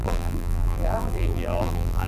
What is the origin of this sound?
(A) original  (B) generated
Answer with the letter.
B